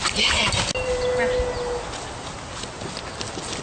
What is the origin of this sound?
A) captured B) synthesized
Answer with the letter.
A